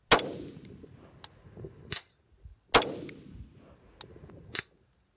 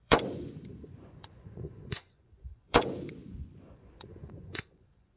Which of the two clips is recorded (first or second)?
first